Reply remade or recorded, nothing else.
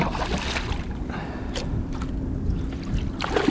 recorded